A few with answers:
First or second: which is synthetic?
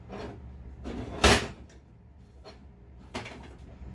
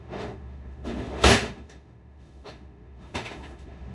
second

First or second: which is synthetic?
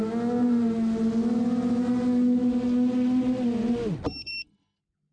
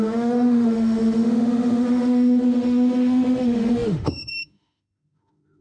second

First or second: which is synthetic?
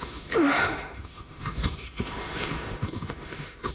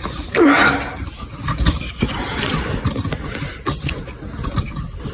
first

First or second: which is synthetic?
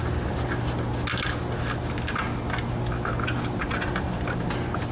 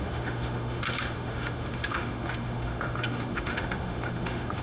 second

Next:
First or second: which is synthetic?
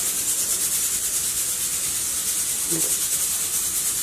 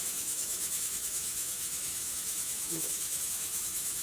second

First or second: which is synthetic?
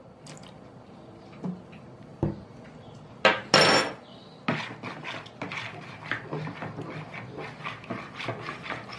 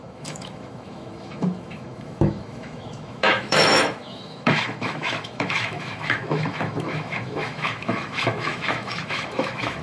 second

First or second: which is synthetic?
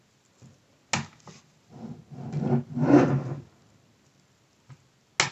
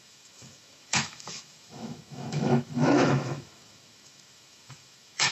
second